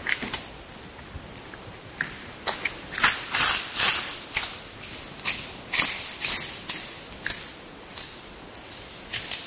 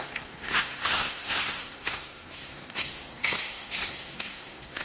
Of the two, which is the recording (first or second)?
first